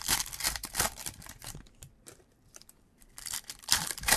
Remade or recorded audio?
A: remade